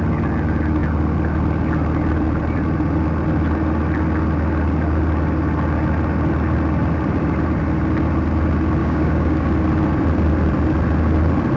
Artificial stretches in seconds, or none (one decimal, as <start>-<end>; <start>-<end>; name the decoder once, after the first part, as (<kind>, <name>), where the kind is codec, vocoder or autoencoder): 8.8-9.5 (codec, DAC)